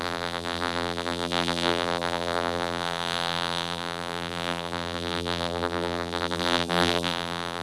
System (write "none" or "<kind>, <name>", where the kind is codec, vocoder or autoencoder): vocoder, BigVGAN v2